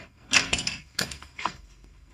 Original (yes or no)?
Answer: no